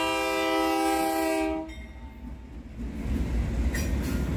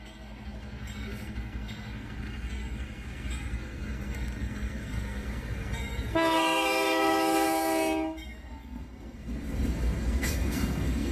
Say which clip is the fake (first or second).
second